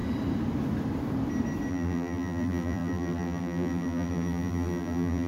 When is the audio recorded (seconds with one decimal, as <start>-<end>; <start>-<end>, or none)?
0.0-1.7